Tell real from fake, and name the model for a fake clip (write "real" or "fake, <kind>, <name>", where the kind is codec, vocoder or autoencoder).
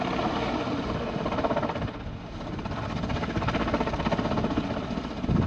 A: real